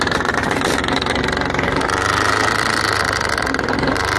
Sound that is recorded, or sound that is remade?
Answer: recorded